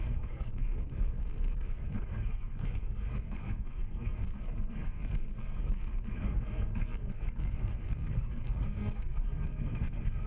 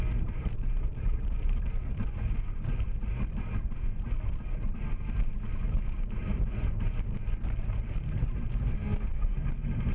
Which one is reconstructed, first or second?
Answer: first